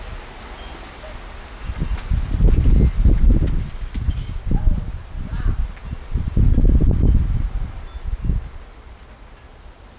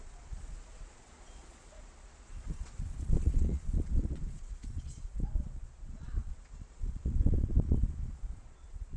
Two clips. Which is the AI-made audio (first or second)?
second